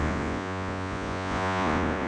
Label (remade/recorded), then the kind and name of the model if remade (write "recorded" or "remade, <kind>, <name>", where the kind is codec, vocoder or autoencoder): remade, vocoder, Vocos